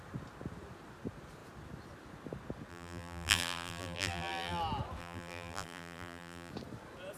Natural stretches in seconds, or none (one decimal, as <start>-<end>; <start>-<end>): 0.0-2.7; 4.6-5.0; 6.5-7.2